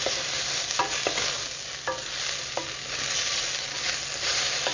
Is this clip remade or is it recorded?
recorded